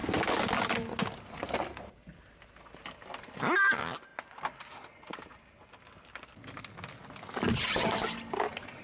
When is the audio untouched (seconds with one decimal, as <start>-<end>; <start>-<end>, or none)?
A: 0.0-8.8